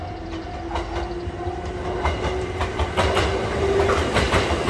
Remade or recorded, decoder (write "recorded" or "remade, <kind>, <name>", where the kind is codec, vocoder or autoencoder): recorded